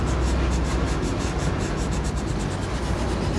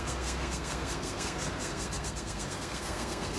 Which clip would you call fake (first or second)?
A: second